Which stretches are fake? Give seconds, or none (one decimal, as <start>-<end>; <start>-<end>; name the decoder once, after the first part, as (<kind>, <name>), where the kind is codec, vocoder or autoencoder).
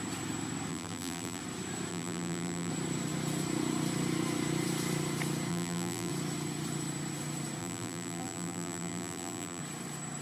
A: 0.7-1.4 (vocoder, BigVGAN v2); 1.9-2.7; 5.5-6.1; 7.6-9.6